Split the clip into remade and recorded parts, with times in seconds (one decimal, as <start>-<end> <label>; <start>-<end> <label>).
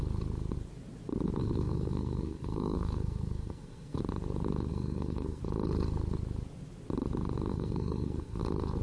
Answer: 0.0-1.4 recorded; 1.4-4.0 remade; 4.0-4.7 recorded; 4.7-5.4 remade; 5.4-7.5 recorded; 7.5-8.4 remade; 8.4-8.8 recorded